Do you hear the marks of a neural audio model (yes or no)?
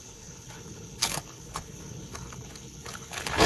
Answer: yes